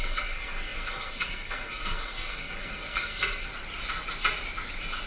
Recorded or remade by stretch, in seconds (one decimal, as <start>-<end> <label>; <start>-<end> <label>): 0.0-3.5 remade; 3.5-5.1 recorded